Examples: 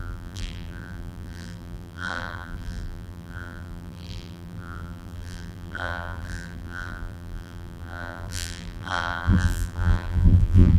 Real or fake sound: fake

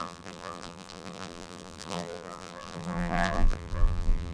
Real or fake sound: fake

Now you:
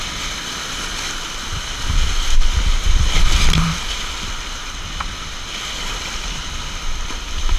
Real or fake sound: real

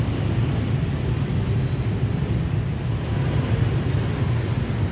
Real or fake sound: real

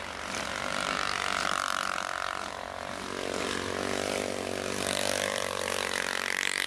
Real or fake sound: fake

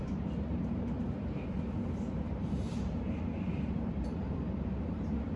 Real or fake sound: fake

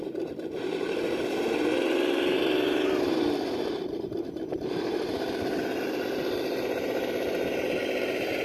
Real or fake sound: fake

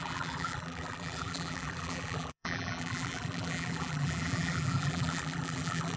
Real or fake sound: fake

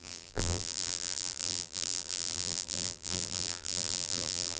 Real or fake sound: fake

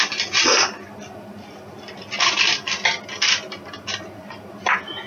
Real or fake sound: real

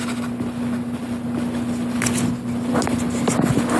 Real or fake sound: real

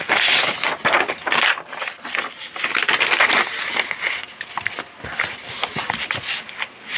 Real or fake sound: real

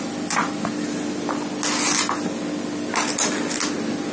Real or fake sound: real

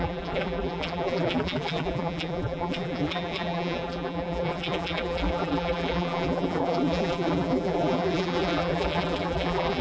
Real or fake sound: fake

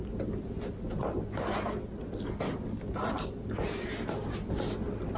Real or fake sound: real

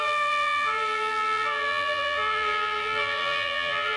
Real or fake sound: fake